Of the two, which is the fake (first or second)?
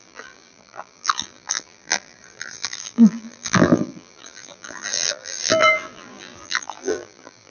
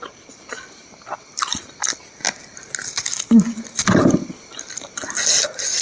first